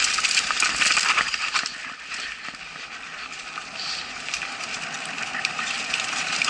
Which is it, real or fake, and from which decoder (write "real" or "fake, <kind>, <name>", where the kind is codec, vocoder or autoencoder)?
fake, vocoder, BigVGAN v2